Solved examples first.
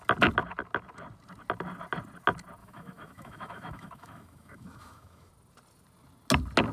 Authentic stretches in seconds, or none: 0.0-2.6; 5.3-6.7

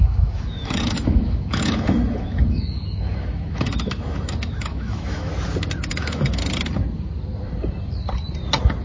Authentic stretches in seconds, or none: 5.3-5.9; 6.4-8.8

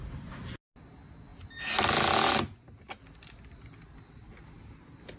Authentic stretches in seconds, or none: 0.0-5.2

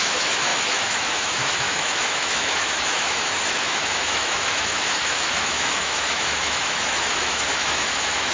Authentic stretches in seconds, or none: none

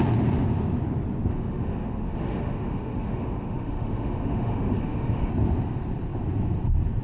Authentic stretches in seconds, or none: 0.0-1.3; 5.3-7.0

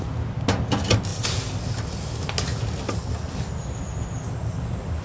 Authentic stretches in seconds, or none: 0.0-5.0